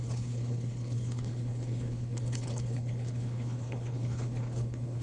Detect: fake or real fake